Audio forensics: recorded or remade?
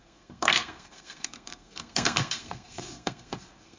remade